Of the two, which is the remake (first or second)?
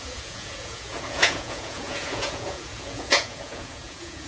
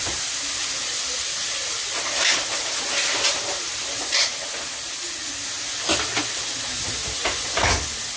first